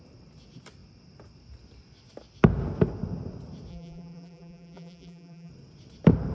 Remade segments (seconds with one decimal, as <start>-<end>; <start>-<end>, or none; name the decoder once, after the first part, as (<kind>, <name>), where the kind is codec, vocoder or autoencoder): 3.7-5.5 (vocoder, BigVGAN v2)